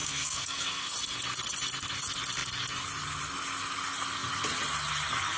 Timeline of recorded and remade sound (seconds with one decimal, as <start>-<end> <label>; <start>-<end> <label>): 0.0-0.9 remade; 0.9-5.4 recorded